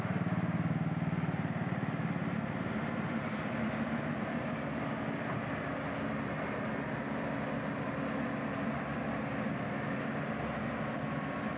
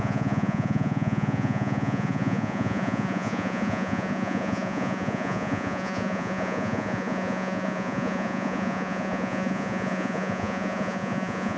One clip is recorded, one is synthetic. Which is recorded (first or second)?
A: first